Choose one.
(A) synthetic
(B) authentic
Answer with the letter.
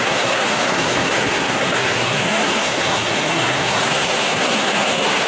A